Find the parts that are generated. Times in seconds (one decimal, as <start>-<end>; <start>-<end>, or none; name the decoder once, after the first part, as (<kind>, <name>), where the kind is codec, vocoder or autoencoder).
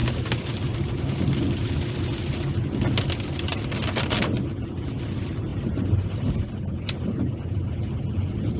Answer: 5.5-6.5 (vocoder, BigVGAN v2)